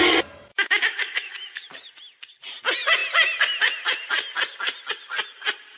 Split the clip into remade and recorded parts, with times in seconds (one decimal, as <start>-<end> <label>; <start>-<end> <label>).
0.0-0.5 recorded; 0.5-1.6 remade; 1.6-5.8 recorded